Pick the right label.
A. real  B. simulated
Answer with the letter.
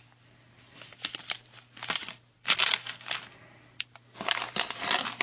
A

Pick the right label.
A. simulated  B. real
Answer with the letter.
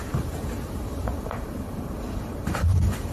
A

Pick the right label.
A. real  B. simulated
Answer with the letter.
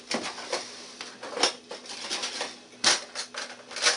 A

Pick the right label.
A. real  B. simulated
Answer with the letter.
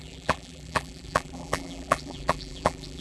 B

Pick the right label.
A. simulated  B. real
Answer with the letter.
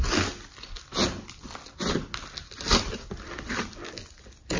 B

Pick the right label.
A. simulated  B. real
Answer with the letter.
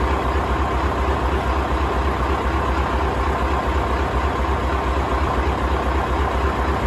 B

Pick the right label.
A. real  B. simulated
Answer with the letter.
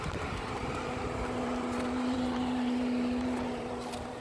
B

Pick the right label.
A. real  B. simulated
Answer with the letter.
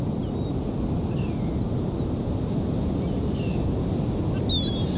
A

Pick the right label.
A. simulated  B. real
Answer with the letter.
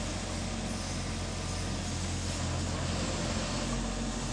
B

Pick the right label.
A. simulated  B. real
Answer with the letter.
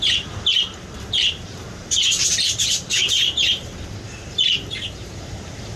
A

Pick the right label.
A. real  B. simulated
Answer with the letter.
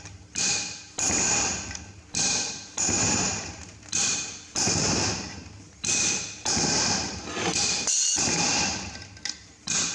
B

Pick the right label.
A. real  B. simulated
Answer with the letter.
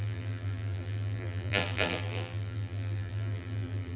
B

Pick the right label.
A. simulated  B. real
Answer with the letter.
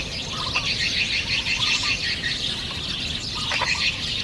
B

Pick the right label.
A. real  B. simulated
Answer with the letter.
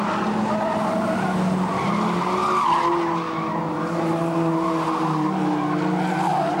A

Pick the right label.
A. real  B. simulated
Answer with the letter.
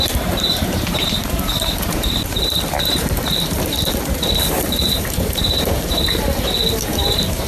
B